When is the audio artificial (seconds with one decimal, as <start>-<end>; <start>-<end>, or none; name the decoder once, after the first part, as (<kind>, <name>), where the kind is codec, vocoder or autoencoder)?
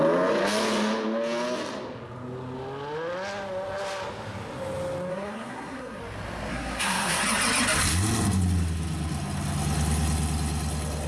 5.1-6.0 (codec, SNAC); 6.5-7.2